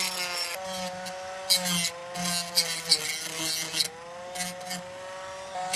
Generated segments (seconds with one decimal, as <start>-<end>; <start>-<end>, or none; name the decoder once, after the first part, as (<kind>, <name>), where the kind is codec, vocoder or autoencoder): none